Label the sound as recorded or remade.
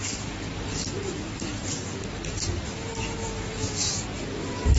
recorded